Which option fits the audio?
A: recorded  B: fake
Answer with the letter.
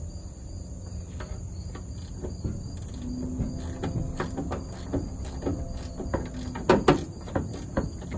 A